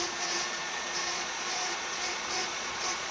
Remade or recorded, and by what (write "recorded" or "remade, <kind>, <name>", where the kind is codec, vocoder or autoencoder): remade, vocoder, Vocos